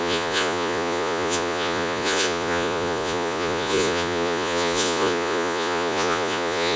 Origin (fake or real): fake